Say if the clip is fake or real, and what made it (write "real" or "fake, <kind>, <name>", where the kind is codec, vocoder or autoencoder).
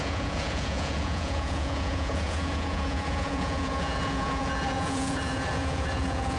fake, vocoder, Vocos